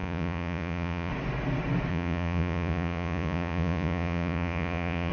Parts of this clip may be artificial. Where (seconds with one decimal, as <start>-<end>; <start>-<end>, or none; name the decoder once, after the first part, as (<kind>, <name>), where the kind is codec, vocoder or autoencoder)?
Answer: 0.0-1.1 (vocoder, Vocos); 1.9-5.1